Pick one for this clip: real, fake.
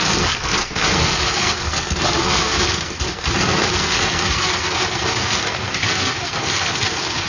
fake